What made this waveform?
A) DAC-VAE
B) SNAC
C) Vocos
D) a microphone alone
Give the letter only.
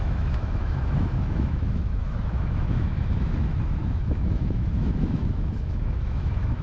A